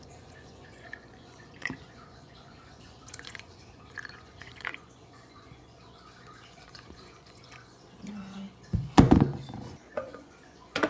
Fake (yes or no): yes